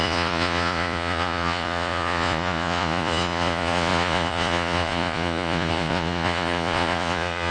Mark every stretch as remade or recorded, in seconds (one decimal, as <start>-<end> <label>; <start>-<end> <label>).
0.0-7.5 remade